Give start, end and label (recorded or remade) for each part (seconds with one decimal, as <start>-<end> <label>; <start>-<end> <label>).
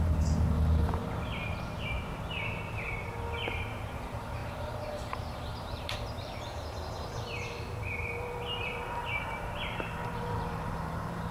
0.0-1.0 remade; 1.0-3.4 recorded; 3.4-11.3 remade